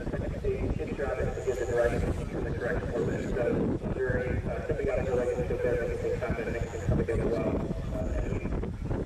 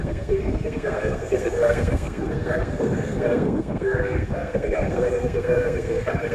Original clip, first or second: first